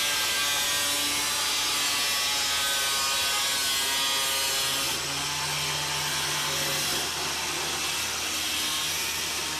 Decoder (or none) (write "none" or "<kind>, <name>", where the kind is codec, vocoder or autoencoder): none